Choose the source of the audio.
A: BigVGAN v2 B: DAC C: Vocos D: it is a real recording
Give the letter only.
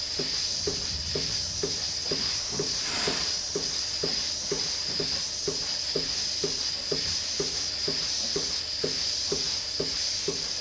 A